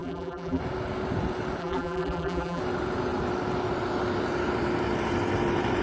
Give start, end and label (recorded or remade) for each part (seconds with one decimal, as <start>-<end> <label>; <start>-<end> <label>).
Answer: 0.0-0.6 remade; 0.6-1.6 recorded; 1.6-2.6 remade; 2.6-5.8 recorded